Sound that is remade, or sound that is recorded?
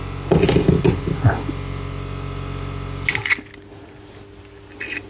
recorded